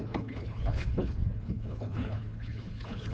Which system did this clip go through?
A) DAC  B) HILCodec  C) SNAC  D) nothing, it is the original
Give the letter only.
B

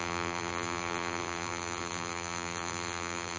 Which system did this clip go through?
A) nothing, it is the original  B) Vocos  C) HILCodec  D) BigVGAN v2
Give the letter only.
D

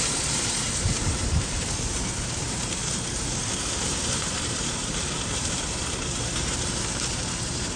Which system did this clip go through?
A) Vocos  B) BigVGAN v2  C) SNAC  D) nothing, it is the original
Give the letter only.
B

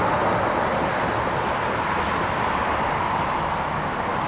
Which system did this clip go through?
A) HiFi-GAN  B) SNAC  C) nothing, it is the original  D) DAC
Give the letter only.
C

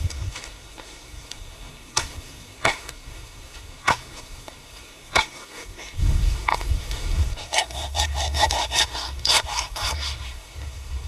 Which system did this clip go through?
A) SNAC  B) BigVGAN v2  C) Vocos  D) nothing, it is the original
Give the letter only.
A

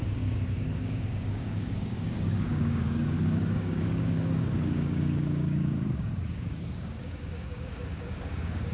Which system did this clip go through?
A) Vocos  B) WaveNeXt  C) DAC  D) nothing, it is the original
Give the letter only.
C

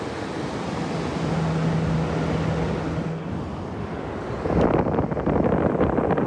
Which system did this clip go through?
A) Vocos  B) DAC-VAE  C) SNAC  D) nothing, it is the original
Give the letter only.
D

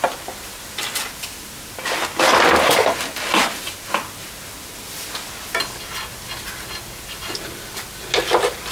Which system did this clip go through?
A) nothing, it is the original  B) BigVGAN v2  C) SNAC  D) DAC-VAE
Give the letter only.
A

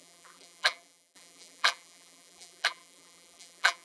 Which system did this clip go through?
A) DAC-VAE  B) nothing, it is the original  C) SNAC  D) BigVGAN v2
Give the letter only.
D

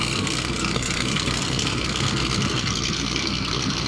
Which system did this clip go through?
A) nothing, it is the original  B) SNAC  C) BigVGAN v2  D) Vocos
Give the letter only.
B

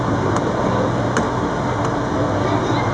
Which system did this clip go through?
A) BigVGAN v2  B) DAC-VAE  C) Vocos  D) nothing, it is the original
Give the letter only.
D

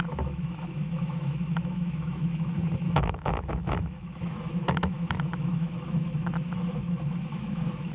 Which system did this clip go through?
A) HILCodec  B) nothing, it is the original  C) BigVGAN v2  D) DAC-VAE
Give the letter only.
D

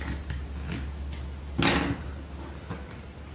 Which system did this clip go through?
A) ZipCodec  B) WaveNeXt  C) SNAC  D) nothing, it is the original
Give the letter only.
D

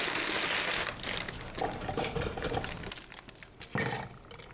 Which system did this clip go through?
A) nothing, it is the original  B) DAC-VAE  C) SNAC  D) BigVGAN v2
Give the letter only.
A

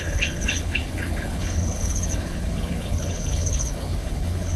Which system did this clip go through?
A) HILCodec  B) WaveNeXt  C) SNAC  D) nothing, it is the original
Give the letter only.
A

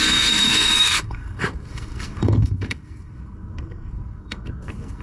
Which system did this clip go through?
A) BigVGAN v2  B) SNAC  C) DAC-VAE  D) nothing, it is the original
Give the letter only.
B